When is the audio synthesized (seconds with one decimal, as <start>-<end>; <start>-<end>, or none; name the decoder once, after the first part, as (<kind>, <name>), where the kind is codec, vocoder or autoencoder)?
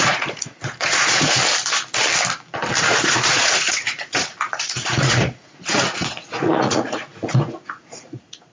0.0-1.4 (vocoder, Vocos); 2.8-8.5